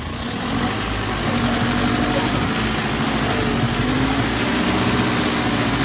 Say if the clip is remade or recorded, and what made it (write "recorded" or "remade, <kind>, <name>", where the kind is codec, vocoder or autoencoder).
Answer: recorded